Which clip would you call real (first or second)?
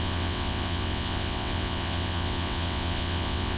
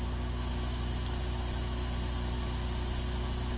second